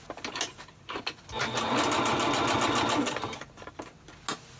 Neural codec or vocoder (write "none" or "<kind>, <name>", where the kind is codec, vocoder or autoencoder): none